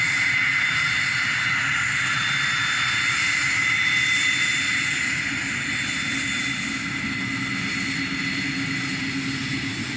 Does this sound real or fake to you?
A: real